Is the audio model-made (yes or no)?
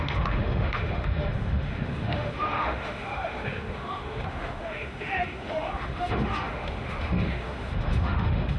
yes